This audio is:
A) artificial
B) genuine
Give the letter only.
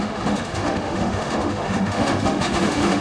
A